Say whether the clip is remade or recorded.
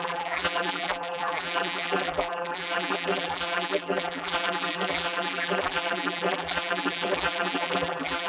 remade